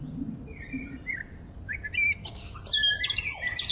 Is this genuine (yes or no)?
yes